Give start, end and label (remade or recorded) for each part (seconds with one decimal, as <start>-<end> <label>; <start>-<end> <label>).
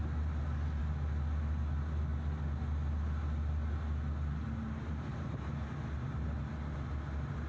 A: 0.0-7.5 recorded